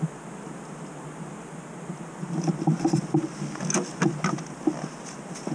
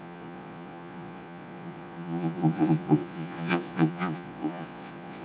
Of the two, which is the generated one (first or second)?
second